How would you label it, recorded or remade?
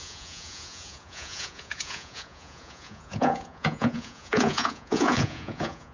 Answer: remade